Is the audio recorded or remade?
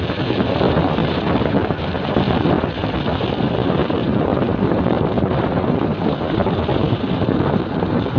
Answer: remade